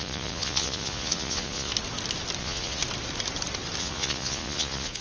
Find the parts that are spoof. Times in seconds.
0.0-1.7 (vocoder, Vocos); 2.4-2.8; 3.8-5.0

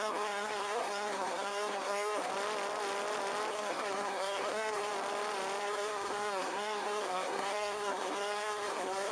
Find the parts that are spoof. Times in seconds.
0.0-2.3 (codec, SNAC); 3.5-4.9; 5.6-9.1

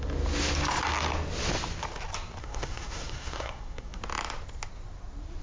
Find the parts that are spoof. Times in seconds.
2.4-4.0 (codec, SNAC)

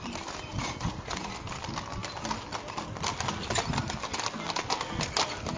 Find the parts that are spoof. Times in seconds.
0.5-1.3 (vocoder, Vocos)

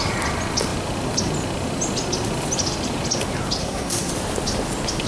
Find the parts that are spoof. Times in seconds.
3.6-4.1 (codec, SNAC)

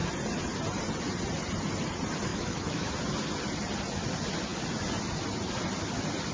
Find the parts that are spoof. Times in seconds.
2.3-2.9 (autoencoder, DAC-VAE)

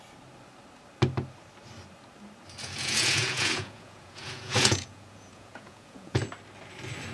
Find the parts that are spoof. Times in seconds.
2.6-6.2 (vocoder, Vocos)